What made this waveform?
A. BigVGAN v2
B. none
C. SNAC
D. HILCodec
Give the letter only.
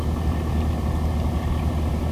B